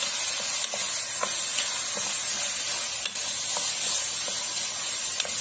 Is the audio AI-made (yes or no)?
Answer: no